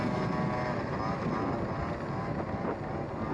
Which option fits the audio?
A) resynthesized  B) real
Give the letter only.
B